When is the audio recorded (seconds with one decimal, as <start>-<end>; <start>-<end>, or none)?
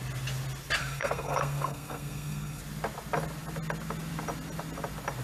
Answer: 0.0-0.8; 2.6-5.2